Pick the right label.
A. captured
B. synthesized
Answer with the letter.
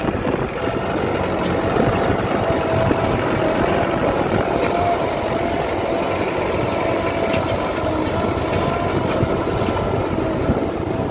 A